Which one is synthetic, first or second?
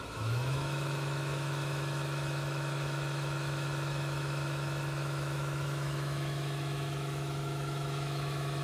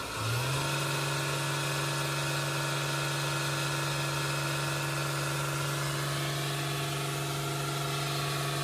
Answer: first